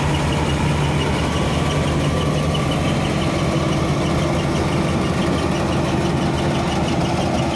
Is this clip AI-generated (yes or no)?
no